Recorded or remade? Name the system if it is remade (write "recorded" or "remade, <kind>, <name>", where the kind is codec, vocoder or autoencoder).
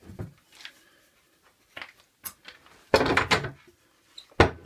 recorded